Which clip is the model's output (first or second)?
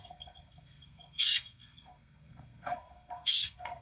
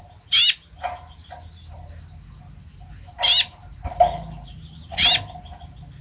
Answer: first